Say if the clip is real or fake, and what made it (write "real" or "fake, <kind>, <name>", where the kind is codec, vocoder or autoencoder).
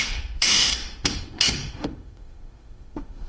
fake, autoencoder, DAC-VAE